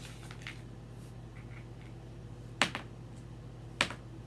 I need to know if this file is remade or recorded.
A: recorded